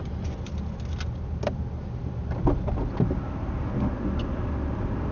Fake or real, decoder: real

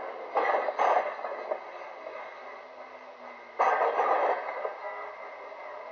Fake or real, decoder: real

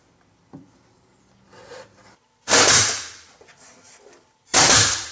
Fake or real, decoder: fake, vocoder, BigVGAN v2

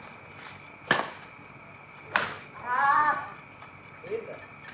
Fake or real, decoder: real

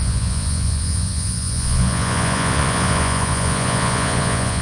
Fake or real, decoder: fake, vocoder, Vocos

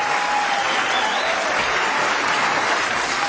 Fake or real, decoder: real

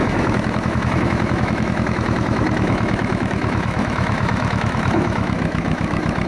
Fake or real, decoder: fake, autoencoder, DAC-VAE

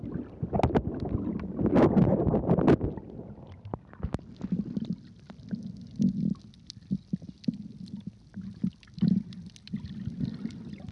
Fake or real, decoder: real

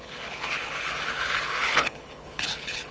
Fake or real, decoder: fake, codec, HILCodec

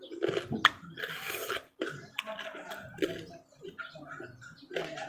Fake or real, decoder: real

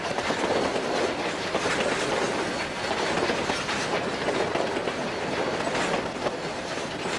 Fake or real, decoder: real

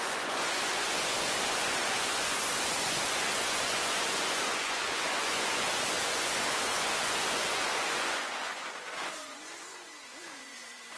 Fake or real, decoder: fake, vocoder, Vocos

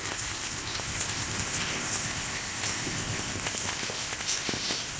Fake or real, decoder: fake, codec, ZipCodec